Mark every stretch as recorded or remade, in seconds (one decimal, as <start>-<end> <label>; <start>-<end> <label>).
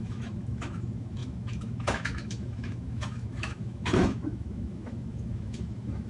0.0-6.1 remade